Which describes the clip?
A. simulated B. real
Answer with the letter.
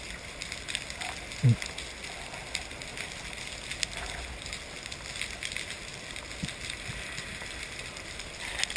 B